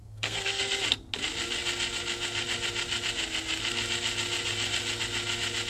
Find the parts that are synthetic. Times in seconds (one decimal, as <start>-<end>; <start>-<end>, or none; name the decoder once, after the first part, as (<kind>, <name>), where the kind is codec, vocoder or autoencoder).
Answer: 0.0-0.6 (codec, SNAC)